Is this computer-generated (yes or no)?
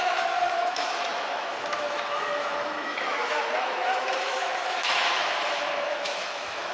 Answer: yes